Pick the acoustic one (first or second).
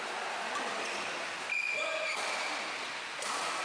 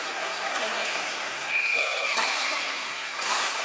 first